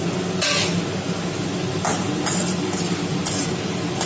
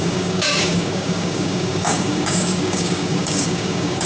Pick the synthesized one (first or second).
second